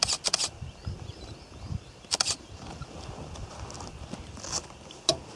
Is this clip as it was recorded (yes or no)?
yes